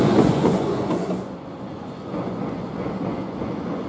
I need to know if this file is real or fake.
fake